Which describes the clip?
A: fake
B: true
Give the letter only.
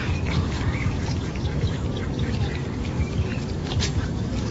A